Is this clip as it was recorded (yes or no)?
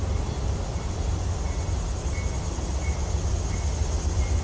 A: yes